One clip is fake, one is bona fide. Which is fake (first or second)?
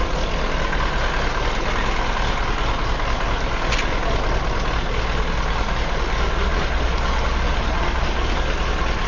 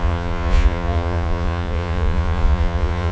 second